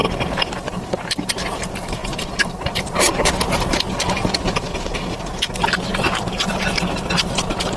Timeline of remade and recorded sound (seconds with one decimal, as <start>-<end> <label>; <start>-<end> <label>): 0.0-2.0 recorded; 2.0-3.3 remade; 3.3-5.9 recorded; 5.9-6.7 remade; 6.7-7.8 recorded